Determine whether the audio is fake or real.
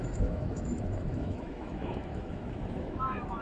fake